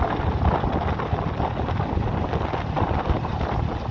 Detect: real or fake real